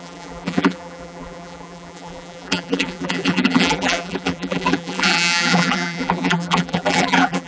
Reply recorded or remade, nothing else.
remade